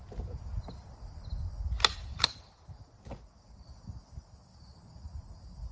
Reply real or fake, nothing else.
real